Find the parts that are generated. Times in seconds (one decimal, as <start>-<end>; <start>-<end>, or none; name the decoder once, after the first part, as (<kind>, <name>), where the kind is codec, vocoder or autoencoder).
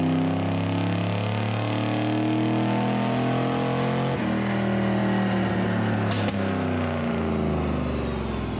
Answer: none